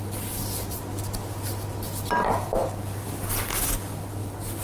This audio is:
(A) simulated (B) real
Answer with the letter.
B